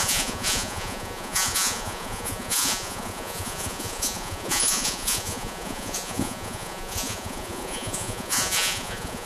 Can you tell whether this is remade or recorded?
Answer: remade